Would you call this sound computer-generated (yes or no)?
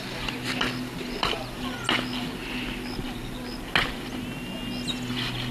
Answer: no